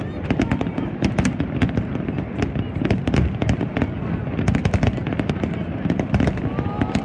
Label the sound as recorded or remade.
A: recorded